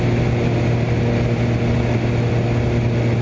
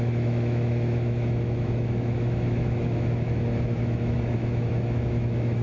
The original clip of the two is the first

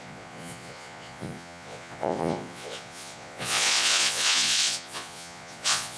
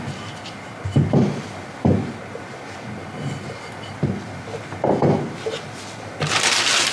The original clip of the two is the second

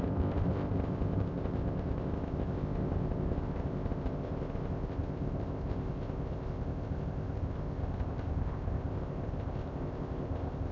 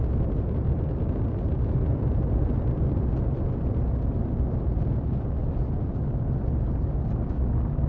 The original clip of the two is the second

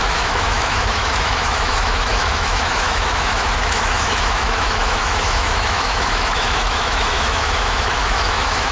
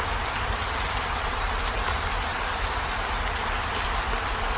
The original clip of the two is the second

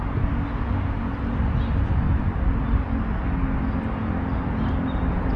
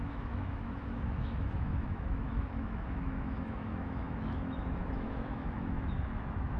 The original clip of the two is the first